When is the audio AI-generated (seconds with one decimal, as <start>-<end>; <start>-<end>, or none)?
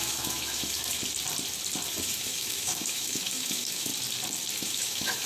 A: 0.0-1.0; 1.9-3.9; 4.5-5.3